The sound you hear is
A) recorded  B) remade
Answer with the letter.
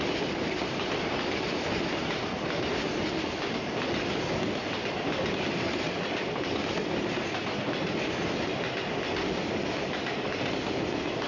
A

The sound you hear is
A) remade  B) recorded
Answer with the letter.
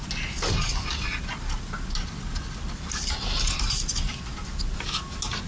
B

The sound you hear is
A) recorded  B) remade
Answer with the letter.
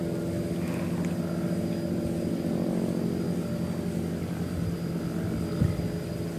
A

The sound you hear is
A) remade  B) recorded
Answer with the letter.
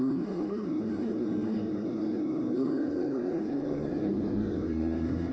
A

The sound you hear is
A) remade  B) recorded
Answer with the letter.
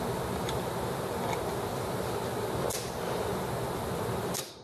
B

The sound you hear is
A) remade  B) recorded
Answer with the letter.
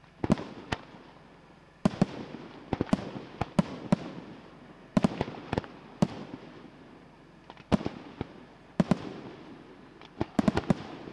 B